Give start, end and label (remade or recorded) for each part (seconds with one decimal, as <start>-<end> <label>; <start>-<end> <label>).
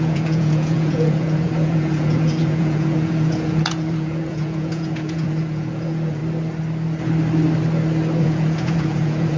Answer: 0.0-6.2 remade; 6.2-8.2 recorded; 8.2-9.4 remade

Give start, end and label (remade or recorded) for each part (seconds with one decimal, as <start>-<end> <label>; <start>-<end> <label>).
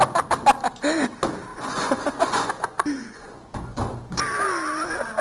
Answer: 0.0-1.5 recorded; 1.5-4.2 remade; 4.2-5.2 recorded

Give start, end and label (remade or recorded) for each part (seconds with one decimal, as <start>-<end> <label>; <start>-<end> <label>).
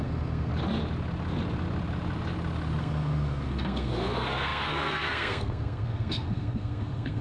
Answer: 0.0-0.5 remade; 0.5-2.8 recorded; 2.8-7.2 remade